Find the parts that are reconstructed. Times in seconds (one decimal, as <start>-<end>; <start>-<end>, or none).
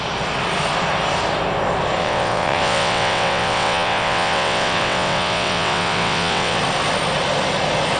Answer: 2.0-6.6